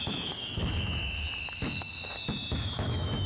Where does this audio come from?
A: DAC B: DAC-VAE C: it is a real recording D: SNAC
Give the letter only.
B